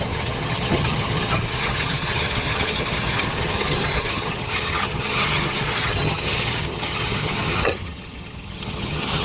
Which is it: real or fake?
fake